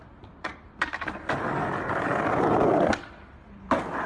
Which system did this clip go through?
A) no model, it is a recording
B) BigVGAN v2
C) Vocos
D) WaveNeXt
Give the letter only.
B